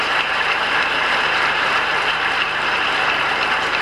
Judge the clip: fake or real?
fake